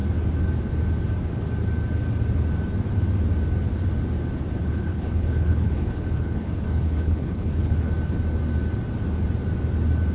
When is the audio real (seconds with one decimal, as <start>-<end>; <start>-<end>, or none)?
0.0-4.6; 7.9-10.1